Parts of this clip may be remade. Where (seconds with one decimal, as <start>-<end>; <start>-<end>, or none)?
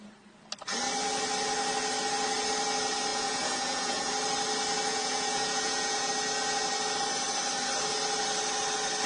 3.1-4.1; 4.9-6.1